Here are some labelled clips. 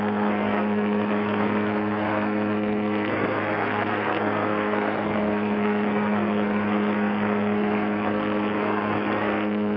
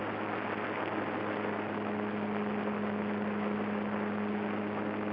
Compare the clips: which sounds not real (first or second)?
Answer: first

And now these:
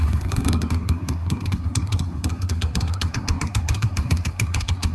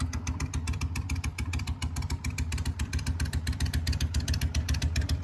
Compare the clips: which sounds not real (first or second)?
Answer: first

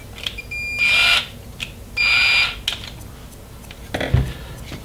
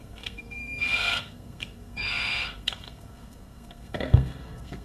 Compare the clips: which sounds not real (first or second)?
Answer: second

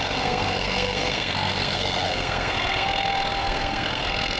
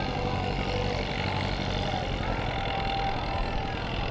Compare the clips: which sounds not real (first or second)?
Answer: first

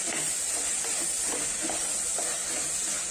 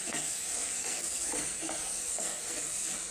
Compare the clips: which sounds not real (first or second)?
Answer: second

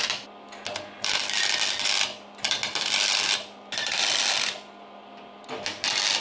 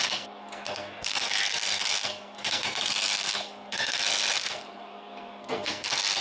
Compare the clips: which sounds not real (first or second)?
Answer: second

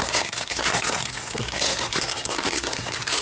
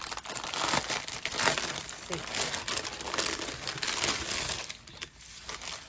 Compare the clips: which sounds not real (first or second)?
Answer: first